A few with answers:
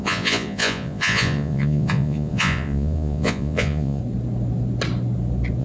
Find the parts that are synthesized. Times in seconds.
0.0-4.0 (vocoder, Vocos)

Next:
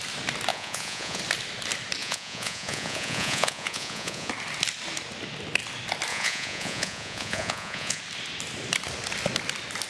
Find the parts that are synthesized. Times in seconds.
0.5-1.2 (vocoder, Vocos); 2.0-4.3; 6.1-8.0

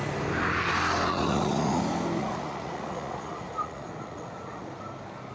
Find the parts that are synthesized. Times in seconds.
1.1-1.8 (vocoder, Vocos); 2.2-4.7

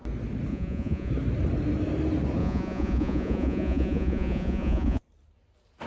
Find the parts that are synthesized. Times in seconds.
0.5-1.1 (vocoder, Vocos); 2.4-5.0

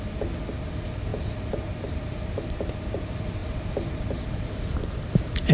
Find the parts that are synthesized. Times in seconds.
none

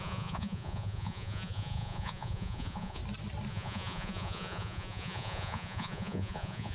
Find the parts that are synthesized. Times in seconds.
0.0-3.0 (vocoder, Vocos); 3.5-6.7

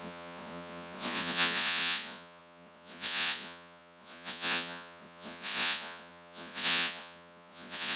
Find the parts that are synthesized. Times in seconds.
0.0-8.0 (vocoder, Vocos)

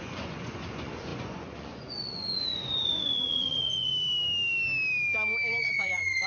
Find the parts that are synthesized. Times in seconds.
0.0-3.9 (vocoder, Vocos); 5.6-6.3